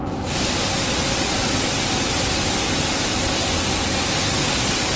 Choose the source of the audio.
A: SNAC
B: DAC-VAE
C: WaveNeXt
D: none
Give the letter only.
D